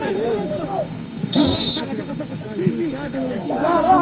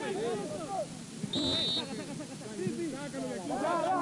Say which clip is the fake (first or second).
first